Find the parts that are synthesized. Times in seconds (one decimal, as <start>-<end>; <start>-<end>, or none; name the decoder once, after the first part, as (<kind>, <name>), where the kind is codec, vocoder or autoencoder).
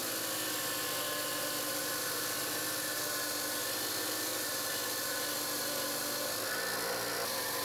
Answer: 4.3-5.2 (vocoder, BigVGAN v2)